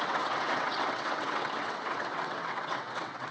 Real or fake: fake